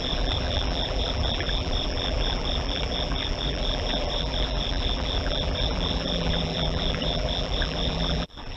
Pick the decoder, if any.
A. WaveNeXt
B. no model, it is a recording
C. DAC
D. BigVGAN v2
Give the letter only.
D